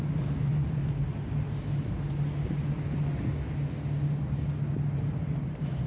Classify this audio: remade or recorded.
recorded